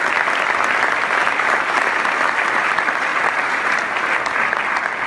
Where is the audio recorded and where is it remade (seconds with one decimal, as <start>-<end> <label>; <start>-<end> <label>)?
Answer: 0.0-1.2 recorded; 1.2-1.8 remade; 1.8-3.1 recorded; 3.1-4.0 remade; 4.0-5.1 recorded